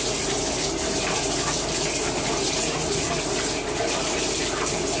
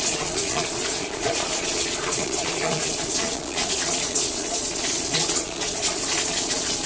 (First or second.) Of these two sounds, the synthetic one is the second